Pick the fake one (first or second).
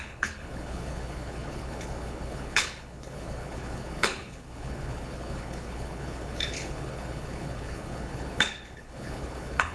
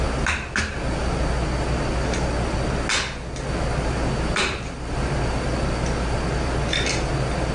first